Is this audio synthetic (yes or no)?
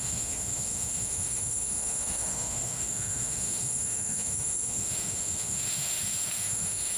yes